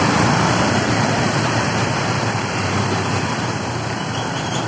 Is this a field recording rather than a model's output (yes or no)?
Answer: no